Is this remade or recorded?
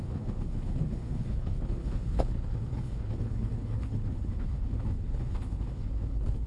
remade